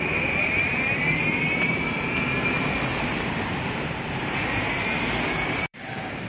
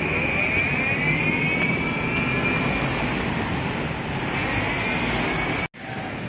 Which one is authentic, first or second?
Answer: second